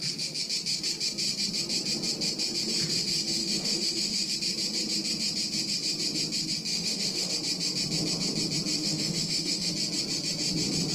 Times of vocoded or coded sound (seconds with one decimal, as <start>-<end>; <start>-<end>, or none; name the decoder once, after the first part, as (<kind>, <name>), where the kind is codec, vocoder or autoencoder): 3.4-4.3 (autoencoder, DAC-VAE); 6.7-7.3; 8.8-9.7